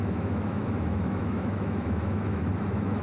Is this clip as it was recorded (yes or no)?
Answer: no